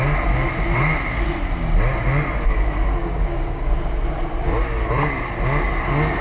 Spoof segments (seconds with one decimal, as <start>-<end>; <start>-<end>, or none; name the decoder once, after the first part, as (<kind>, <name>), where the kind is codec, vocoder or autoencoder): 3.0-3.6 (codec, DAC)